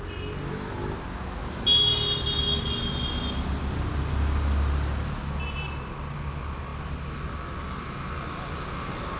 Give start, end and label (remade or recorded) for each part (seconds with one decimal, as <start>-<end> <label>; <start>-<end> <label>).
0.0-9.2 recorded